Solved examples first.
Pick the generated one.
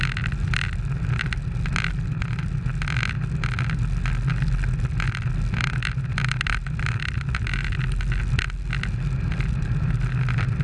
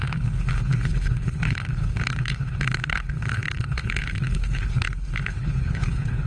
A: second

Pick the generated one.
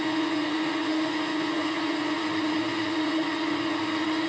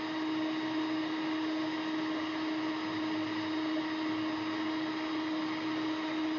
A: first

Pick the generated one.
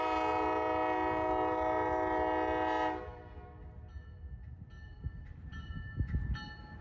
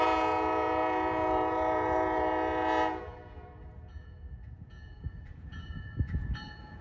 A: second